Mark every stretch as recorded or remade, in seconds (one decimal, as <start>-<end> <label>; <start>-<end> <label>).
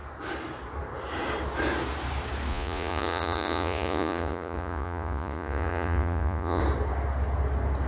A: 0.0-2.5 recorded; 2.5-6.6 remade; 6.6-7.9 recorded